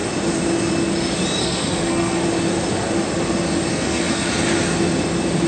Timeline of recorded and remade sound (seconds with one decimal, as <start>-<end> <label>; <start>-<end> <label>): 0.0-1.4 recorded; 1.4-2.2 remade; 2.2-3.7 recorded; 3.7-4.3 remade; 4.3-5.5 recorded